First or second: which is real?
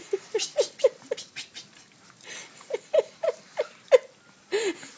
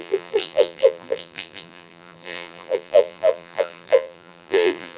first